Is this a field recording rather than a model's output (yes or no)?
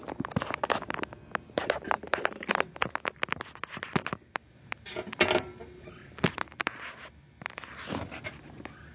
yes